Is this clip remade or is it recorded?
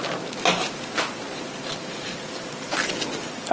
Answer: recorded